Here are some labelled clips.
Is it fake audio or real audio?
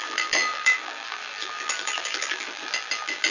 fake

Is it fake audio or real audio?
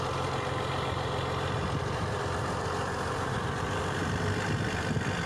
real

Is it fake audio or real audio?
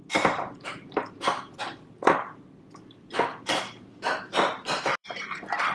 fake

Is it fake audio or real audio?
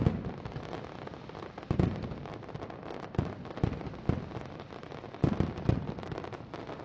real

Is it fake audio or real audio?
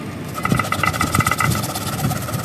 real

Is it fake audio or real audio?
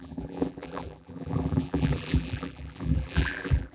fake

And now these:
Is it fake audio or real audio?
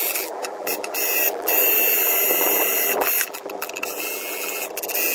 fake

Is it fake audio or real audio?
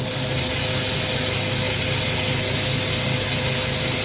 real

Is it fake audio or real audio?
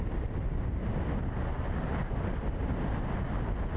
real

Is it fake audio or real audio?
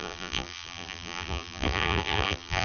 fake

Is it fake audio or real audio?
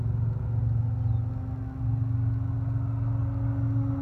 real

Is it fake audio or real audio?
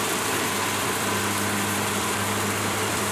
fake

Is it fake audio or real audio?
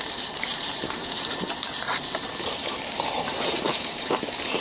fake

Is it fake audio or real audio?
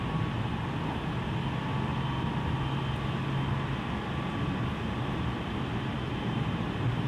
real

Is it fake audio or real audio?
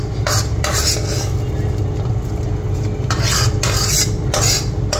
real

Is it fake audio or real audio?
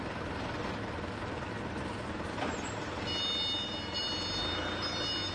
real